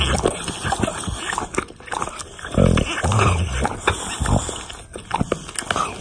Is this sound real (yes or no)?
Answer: yes